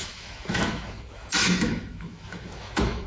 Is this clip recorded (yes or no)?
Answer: no